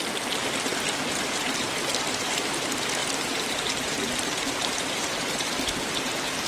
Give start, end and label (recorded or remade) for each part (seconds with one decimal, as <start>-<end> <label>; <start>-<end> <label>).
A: 0.0-3.0 recorded; 3.0-5.4 remade; 5.4-6.5 recorded